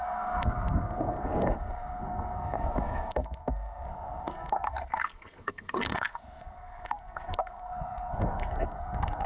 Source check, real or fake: fake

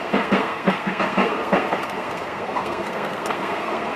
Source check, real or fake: fake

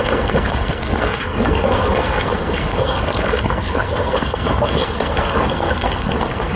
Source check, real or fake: fake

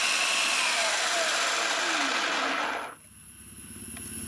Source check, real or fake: real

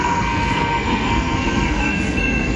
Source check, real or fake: fake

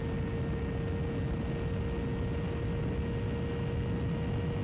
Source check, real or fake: real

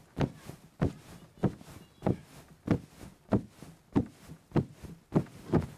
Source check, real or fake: real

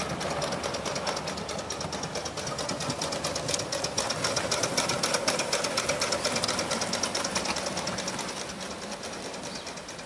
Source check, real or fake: real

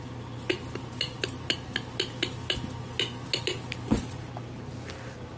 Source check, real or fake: real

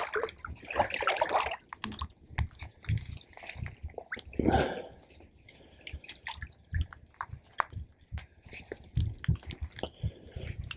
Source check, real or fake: real